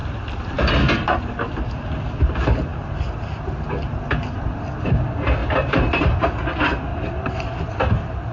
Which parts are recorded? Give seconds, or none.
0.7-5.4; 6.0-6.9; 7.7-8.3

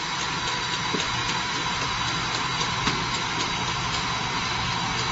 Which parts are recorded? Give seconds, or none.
none

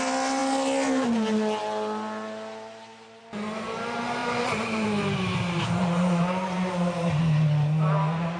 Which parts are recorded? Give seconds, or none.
0.0-4.2; 7.2-8.4

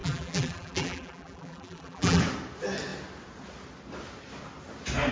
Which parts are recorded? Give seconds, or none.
2.2-5.1